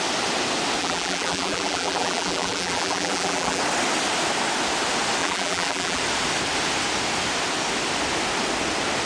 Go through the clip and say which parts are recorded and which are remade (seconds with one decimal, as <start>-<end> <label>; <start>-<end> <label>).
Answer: 0.0-0.8 recorded; 0.8-3.6 remade; 3.6-5.2 recorded; 5.2-6.0 remade; 6.0-9.1 recorded